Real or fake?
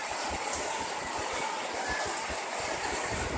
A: real